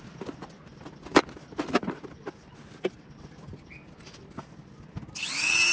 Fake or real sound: real